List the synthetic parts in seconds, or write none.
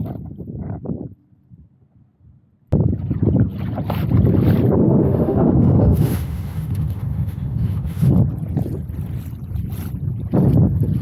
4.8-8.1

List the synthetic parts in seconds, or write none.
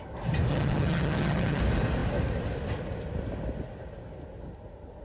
0.5-1.6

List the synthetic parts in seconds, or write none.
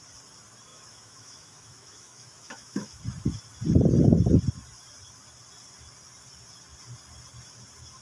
0.7-3.0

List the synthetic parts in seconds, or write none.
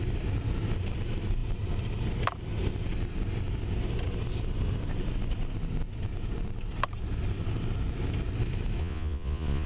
8.8-9.7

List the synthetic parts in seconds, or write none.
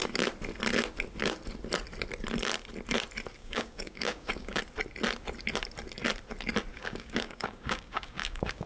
3.4-4.6; 6.7-8.7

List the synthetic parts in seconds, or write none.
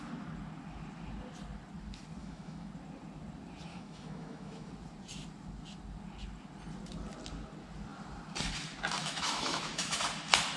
2.2-2.7; 3.7-4.7; 9.0-10.0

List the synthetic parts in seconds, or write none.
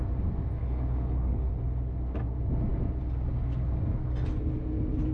0.6-1.5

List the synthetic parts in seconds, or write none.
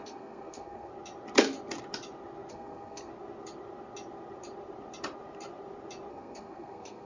0.0-0.9; 2.5-3.1; 6.1-7.0